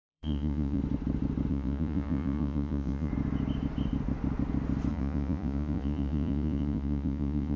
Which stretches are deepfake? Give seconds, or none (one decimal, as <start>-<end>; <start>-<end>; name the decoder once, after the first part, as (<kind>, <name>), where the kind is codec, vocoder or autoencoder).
0.0-0.8 (vocoder, Vocos); 1.5-3.1; 4.9-7.6